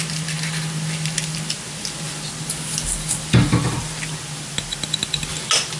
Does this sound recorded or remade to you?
recorded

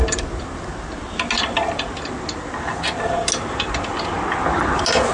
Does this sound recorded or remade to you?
recorded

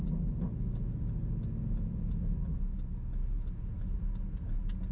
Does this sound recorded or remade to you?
recorded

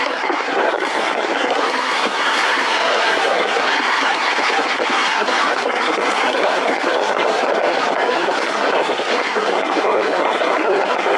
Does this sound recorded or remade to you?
remade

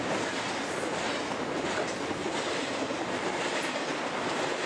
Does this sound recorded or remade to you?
recorded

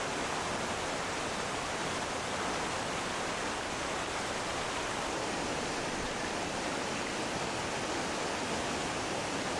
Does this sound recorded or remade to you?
recorded